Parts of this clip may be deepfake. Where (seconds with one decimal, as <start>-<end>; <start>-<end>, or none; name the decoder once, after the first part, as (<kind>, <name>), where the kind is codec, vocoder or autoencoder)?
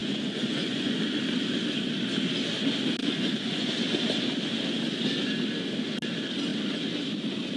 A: 0.0-1.0 (vocoder, Vocos); 3.0-3.7